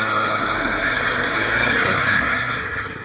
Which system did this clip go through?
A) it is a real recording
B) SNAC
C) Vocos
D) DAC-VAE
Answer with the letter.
B